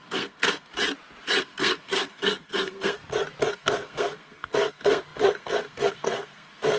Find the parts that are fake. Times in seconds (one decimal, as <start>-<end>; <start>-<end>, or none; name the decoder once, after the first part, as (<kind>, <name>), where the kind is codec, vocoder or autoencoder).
0.0-0.7 (codec, SNAC); 1.4-3.0; 3.5-6.8